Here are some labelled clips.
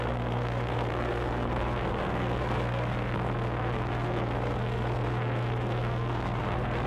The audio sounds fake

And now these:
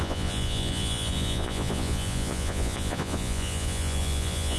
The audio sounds fake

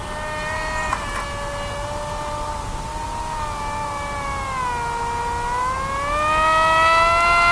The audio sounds real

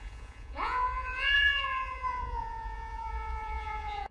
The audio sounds fake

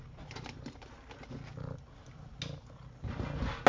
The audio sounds real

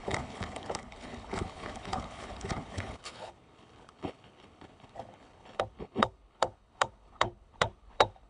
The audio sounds fake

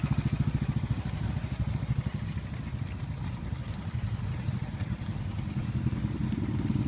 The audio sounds real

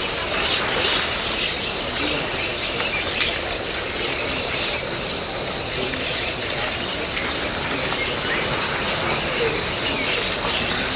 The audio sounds real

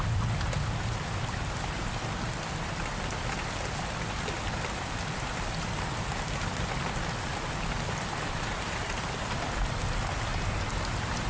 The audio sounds real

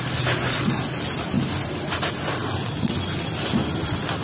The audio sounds real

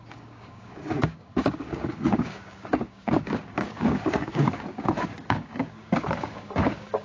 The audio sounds fake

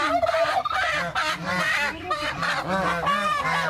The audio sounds real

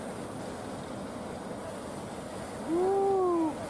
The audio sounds real